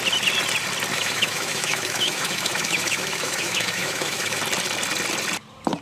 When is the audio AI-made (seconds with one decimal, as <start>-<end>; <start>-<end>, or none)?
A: 0.9-4.4